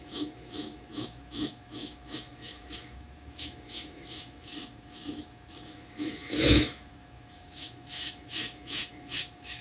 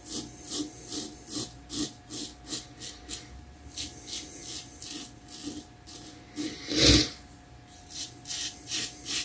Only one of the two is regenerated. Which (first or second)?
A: first